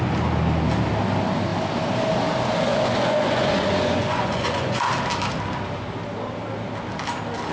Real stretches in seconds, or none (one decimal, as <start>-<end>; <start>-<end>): 0.0-2.7; 4.9-7.5